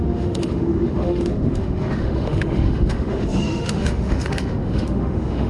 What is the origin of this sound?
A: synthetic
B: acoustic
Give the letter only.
A